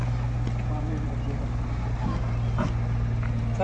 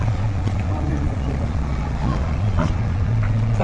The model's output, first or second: second